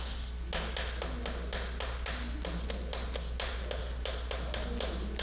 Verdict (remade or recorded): recorded